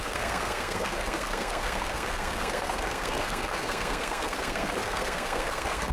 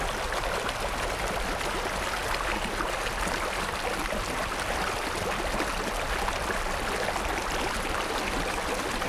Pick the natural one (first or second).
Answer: second